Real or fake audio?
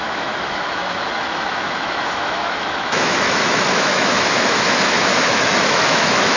fake